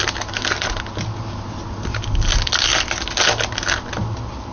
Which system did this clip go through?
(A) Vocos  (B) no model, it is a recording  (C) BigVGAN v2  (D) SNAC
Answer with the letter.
B